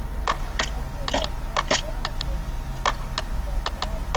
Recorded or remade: recorded